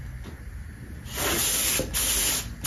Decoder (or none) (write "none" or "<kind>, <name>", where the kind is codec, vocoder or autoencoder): none